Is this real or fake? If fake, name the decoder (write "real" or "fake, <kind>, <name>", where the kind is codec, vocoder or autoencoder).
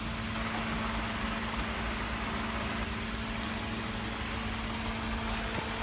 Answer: real